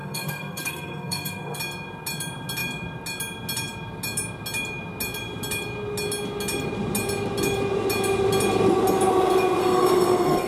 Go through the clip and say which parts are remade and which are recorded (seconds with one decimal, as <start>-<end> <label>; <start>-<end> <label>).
0.0-1.6 remade; 1.6-9.6 recorded; 9.6-10.5 remade